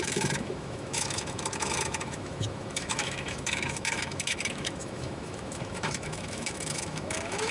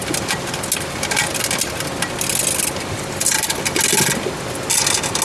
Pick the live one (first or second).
second